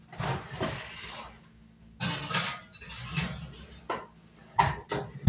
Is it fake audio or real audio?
real